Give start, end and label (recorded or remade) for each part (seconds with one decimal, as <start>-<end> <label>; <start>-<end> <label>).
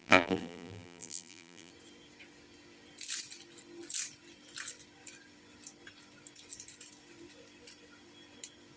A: 0.0-1.7 remade; 1.7-8.8 recorded